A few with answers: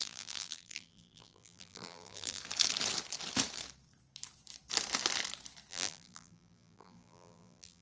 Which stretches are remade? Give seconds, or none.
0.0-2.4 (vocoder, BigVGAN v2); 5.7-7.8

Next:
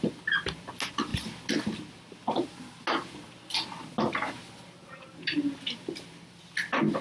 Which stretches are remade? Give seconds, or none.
none